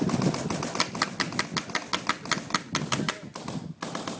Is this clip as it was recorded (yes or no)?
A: yes